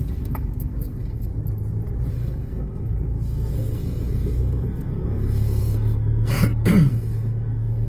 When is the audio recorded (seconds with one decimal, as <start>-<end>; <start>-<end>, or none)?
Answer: 1.3-2.1